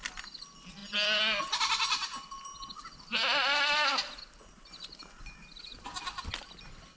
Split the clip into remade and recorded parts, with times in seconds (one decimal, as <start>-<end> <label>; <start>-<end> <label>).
0.0-7.0 recorded